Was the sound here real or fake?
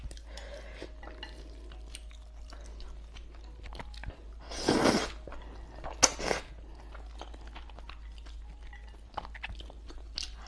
real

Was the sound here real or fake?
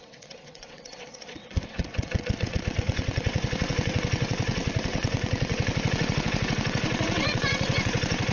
fake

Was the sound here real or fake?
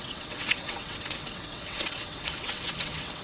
fake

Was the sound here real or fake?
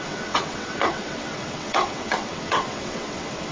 fake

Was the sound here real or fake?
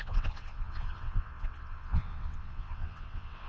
fake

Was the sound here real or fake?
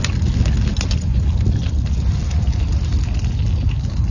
real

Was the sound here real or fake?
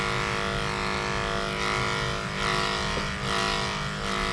real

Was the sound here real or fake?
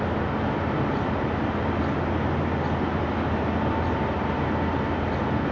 real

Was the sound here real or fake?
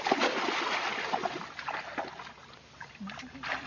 real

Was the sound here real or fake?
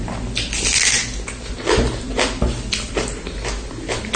real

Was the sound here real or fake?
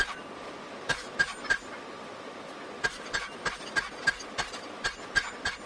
real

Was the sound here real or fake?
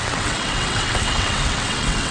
fake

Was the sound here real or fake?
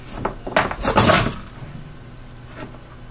real